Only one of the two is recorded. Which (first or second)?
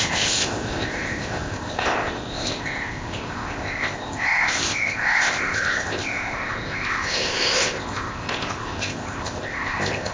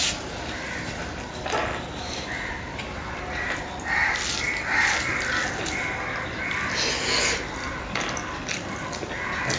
second